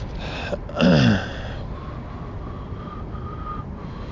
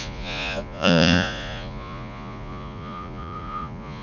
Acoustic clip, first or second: first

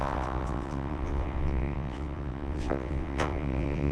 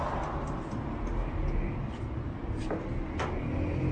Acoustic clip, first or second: second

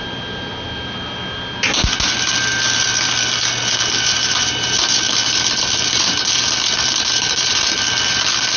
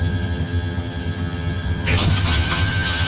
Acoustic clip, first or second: first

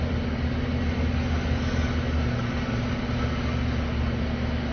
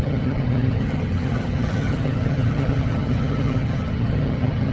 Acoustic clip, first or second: first